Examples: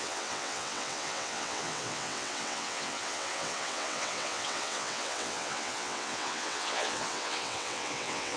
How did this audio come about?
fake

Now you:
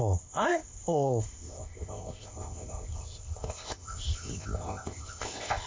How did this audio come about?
fake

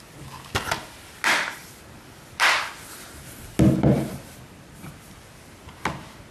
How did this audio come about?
real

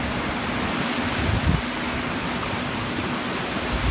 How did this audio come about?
real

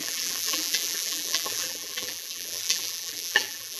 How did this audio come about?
fake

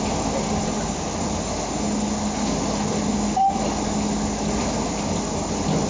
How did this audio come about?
real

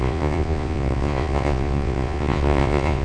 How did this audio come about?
fake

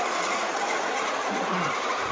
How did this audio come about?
fake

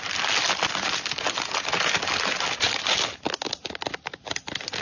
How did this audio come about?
real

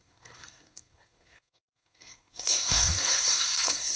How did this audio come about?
fake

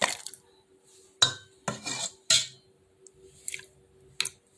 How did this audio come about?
real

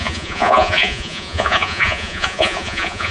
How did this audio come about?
fake